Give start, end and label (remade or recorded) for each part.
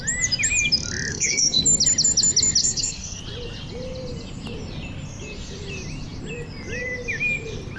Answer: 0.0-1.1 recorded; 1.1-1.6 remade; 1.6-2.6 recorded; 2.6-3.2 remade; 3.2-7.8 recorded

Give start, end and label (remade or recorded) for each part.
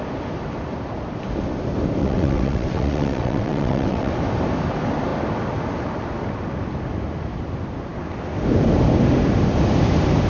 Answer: 0.0-2.0 recorded; 2.0-4.1 remade; 4.1-10.3 recorded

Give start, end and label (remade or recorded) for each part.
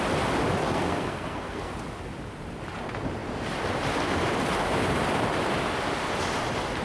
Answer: 0.0-0.6 recorded; 0.6-1.7 remade; 1.7-6.8 recorded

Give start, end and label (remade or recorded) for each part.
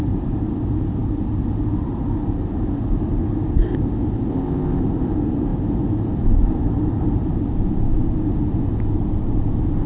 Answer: 0.0-4.3 recorded; 4.3-4.8 remade; 4.8-9.9 recorded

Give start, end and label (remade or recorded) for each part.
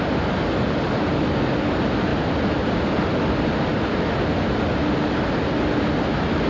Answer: 0.0-6.5 recorded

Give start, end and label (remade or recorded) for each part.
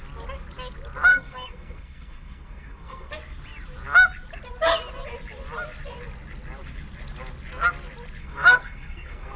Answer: 0.0-1.1 recorded; 1.1-3.1 remade; 3.1-8.2 recorded; 8.2-9.4 remade